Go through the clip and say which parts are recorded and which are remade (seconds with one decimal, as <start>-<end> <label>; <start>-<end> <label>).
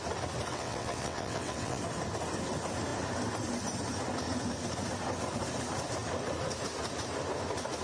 0.0-0.5 recorded; 0.5-1.8 remade; 1.8-7.8 recorded